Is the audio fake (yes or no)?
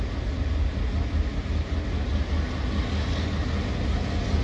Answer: no